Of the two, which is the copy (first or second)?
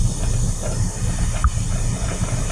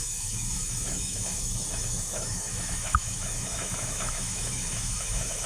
second